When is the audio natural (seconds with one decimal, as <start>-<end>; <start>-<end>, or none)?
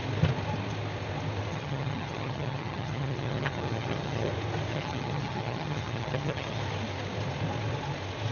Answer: 0.0-1.5; 4.3-4.7; 6.6-8.3